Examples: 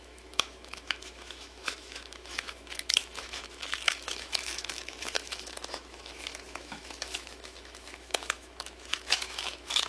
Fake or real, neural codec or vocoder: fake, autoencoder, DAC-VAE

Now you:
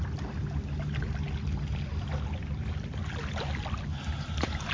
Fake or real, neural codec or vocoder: real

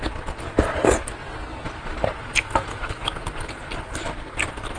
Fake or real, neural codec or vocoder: real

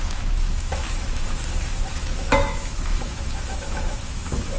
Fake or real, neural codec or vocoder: fake, autoencoder, DAC-VAE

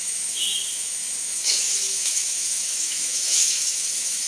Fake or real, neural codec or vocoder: fake, autoencoder, DAC-VAE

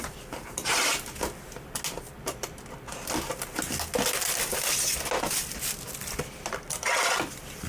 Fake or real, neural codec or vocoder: real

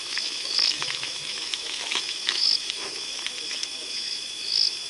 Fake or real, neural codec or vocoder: fake, autoencoder, DAC-VAE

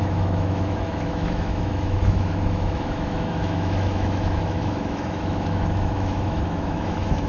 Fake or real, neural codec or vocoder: fake, autoencoder, DAC-VAE